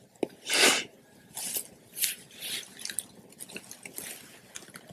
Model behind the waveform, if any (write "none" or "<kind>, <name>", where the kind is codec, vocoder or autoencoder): none